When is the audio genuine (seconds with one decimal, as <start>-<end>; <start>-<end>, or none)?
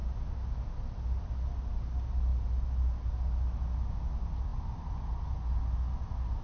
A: 0.0-6.4